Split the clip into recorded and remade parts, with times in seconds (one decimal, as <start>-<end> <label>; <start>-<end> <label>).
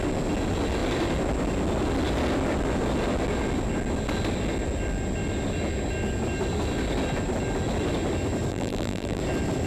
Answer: 0.0-8.5 recorded; 8.5-9.2 remade; 9.2-9.7 recorded